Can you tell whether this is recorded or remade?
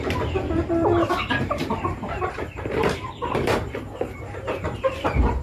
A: remade